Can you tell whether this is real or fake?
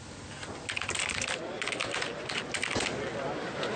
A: real